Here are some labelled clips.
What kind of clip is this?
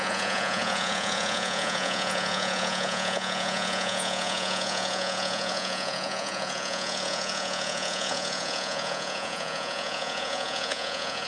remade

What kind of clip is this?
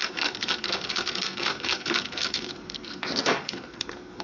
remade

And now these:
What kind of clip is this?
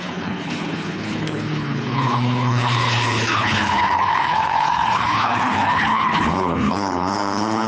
remade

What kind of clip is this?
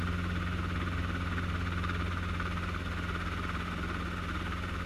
recorded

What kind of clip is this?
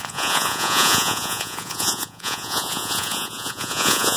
remade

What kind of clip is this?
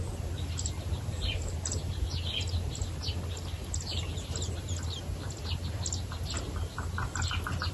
recorded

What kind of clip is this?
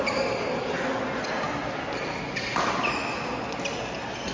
recorded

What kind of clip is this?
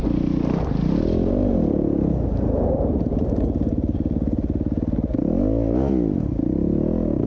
recorded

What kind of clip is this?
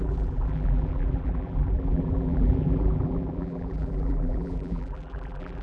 remade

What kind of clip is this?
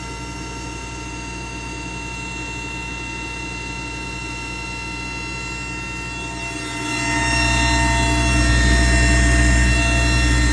recorded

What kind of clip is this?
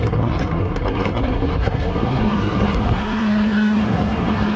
remade